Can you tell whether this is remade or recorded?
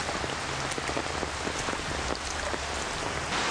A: recorded